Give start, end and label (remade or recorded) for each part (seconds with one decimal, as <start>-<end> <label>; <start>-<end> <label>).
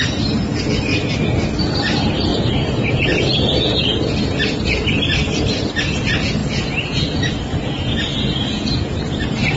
0.0-2.3 recorded; 2.3-4.0 remade; 4.0-6.4 recorded; 6.4-9.2 remade; 9.2-9.6 recorded